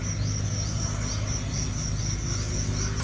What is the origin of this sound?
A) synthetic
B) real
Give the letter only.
B